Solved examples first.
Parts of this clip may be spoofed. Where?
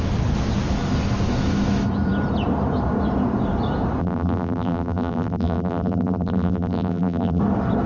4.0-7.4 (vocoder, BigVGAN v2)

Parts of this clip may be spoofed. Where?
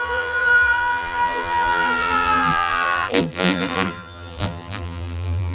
0.0-5.5 (vocoder, BigVGAN v2)